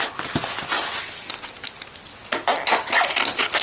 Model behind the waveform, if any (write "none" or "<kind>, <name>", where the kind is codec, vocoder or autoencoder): none